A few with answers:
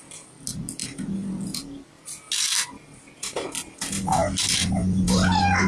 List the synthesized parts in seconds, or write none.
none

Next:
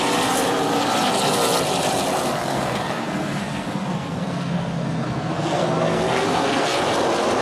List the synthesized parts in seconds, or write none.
2.4-6.8 (codec, SNAC)

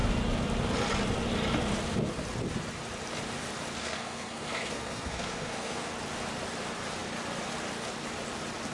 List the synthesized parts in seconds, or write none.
3.8-5.9 (codec, SNAC)

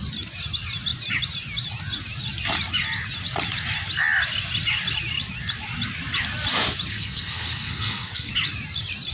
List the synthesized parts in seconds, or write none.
6.9-8.3 (codec, SNAC)

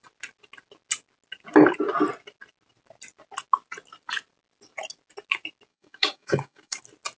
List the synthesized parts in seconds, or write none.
5.7-6.8 (codec, DAC)